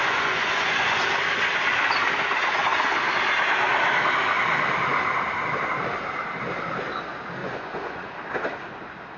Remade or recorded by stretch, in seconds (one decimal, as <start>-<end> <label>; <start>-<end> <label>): 0.0-1.0 remade; 1.0-7.4 recorded; 7.4-8.1 remade; 8.1-9.2 recorded